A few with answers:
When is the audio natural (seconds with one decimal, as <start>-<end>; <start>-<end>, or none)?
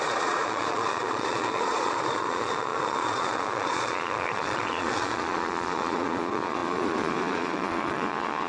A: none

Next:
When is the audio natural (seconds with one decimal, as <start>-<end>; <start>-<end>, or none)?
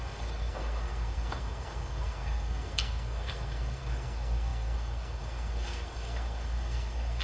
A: none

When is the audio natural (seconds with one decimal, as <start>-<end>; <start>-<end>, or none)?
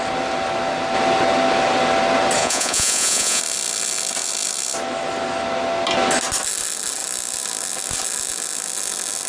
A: 0.0-2.4; 3.4-9.3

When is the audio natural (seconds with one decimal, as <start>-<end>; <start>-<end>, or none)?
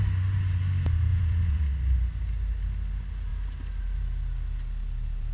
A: 0.0-1.1; 1.7-5.3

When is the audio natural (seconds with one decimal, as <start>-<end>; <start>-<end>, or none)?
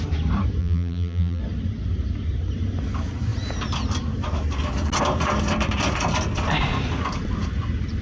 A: 0.0-0.6; 1.4-8.0